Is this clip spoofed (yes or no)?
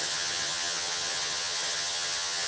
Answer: yes